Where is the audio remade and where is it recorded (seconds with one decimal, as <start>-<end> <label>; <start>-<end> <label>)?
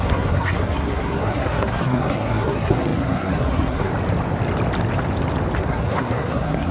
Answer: 0.0-3.9 remade; 3.9-5.6 recorded; 5.6-6.7 remade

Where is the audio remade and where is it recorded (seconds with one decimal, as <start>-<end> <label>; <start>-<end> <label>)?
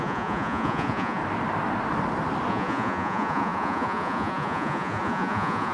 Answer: 0.0-1.2 remade; 1.2-2.5 recorded; 2.5-5.7 remade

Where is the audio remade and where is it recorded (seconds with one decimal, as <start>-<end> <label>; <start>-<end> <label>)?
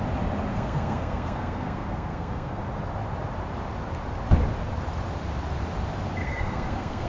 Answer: 0.0-0.5 recorded; 0.5-2.6 remade; 2.6-6.2 recorded; 6.2-7.1 remade